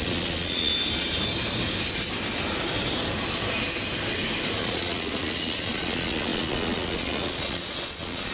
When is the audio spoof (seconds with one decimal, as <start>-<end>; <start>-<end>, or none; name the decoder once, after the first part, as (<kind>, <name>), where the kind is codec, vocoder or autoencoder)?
0.0-0.7 (vocoder, Vocos); 4.6-8.3